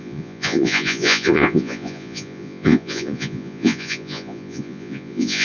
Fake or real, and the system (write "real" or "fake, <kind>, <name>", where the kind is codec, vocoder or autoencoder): fake, vocoder, Vocos